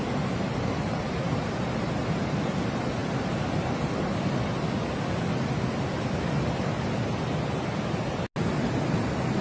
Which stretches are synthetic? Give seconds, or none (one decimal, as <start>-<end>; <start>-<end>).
0.0-1.9

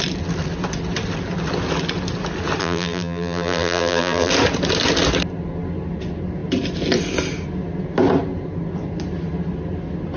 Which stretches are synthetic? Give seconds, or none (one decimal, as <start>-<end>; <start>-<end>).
2.6-4.3

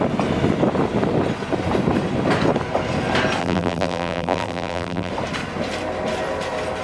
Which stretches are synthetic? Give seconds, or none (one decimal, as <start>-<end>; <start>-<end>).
3.4-5.1

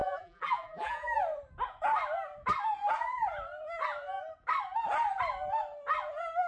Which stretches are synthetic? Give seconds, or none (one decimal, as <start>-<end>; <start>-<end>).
0.0-1.2

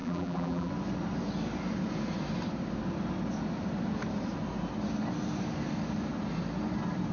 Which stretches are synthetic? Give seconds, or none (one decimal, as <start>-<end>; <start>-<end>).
0.0-0.7

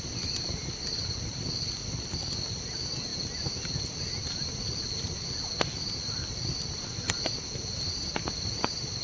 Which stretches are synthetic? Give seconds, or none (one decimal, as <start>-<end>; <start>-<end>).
0.0-3.1; 6.0-9.0

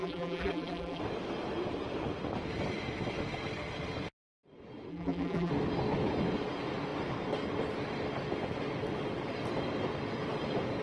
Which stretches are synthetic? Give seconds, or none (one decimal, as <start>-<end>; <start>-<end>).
0.0-1.0; 4.9-5.5

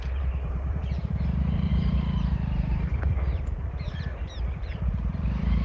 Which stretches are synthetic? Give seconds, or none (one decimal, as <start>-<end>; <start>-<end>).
0.0-1.7; 4.4-5.6